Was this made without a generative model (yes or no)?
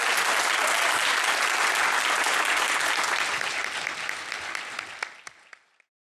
yes